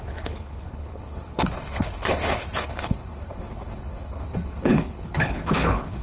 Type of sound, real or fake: fake